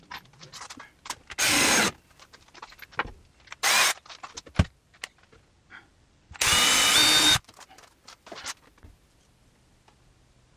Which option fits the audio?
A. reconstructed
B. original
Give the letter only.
B